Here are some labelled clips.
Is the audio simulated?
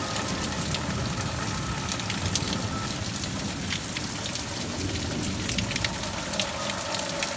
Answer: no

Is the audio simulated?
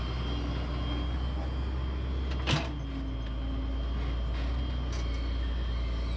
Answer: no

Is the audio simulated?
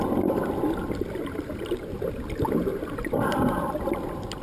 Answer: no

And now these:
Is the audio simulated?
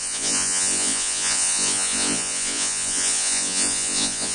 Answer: yes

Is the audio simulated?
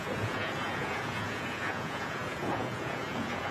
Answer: yes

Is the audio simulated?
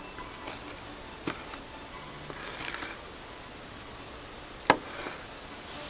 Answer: no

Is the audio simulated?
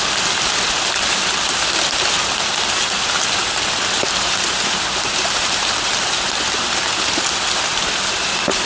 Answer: no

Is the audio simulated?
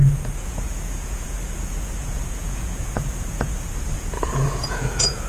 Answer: yes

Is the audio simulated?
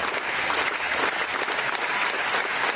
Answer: no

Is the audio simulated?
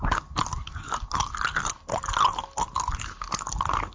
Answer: no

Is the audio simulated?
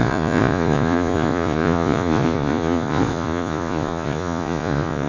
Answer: yes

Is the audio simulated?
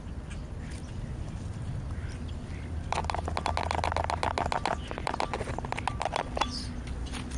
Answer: no